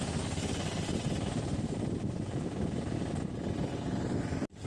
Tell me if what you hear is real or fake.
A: real